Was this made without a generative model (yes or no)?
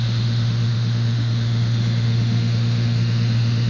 no